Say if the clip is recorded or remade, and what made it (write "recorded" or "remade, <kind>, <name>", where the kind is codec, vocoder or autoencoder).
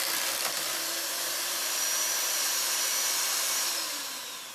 remade, vocoder, BigVGAN v2